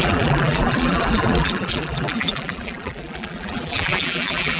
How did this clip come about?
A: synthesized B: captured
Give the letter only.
A